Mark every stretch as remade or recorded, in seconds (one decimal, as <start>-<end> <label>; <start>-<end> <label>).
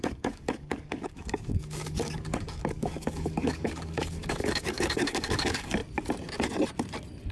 0.0-5.8 remade; 5.8-7.3 recorded